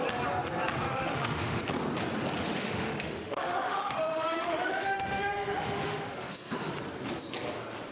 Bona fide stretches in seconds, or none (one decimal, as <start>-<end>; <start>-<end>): 0.0-0.9; 1.6-2.4; 6.7-7.9